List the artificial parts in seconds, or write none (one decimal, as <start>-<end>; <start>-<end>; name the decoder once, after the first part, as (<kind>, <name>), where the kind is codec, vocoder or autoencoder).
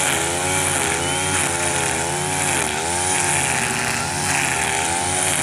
none